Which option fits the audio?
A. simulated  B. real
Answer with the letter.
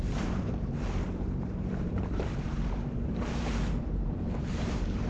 A